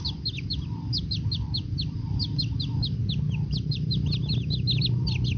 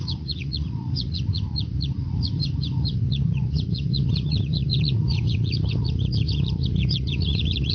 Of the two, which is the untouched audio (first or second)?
first